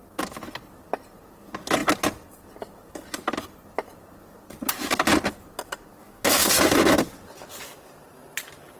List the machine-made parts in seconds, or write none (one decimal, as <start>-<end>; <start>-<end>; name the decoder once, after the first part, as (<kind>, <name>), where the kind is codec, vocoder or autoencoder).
6.0-6.5 (codec, DAC)